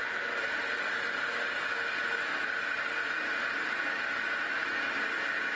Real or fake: real